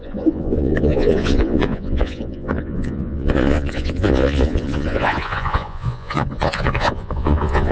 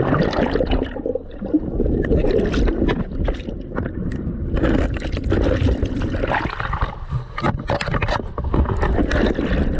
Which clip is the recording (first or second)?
second